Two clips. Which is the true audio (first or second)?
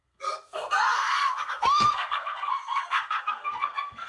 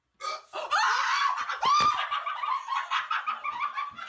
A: second